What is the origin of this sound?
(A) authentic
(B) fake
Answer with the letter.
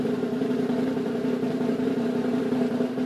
B